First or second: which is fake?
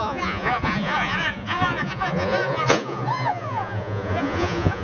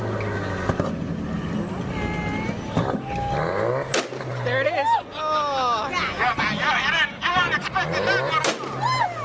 first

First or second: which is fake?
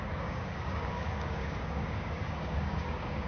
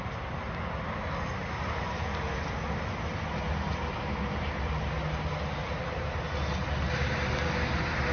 first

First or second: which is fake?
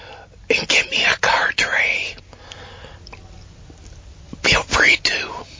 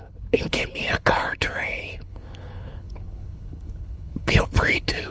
second